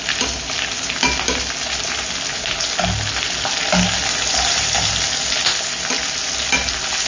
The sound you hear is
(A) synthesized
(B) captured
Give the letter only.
B